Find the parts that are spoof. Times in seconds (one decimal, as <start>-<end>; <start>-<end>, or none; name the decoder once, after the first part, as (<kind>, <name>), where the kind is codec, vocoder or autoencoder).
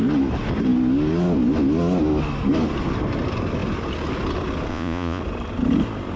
4.7-5.2 (vocoder, Vocos)